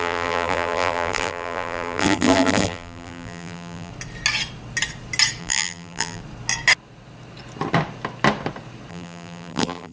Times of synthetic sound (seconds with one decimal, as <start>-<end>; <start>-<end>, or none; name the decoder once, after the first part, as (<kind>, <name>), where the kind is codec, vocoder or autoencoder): 0.0-3.9 (vocoder, BigVGAN v2); 5.4-6.2; 8.9-9.9